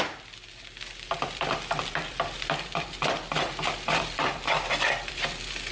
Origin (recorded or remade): remade